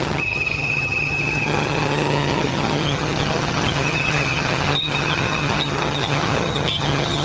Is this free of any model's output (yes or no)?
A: no